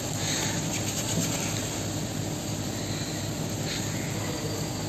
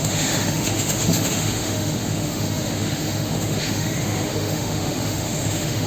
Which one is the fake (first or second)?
second